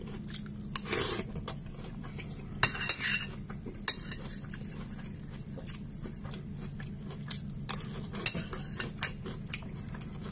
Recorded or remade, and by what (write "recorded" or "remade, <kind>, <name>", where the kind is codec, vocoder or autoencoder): recorded